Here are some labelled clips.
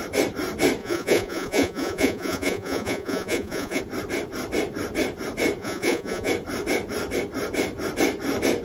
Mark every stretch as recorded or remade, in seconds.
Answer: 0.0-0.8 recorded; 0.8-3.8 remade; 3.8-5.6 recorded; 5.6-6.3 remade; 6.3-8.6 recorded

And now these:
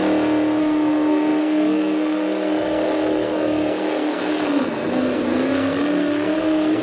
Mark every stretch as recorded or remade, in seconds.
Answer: 0.0-0.6 recorded; 0.6-6.8 remade

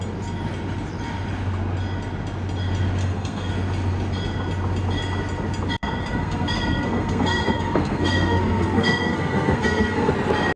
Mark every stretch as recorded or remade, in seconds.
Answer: 0.0-3.0 recorded; 3.0-3.5 remade; 3.5-6.0 recorded; 6.0-10.1 remade; 10.1-10.6 recorded

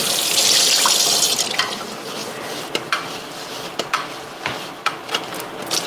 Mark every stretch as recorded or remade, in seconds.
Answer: 0.0-5.9 recorded

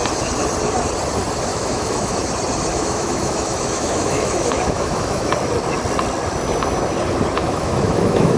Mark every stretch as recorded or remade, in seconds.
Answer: 0.0-1.5 recorded; 1.5-2.2 remade; 2.2-2.7 recorded; 2.7-5.3 remade; 5.3-7.4 recorded; 7.4-8.4 remade

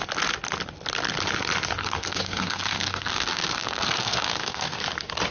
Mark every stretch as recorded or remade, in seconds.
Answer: 0.0-1.8 recorded; 1.8-4.8 remade; 4.8-5.3 recorded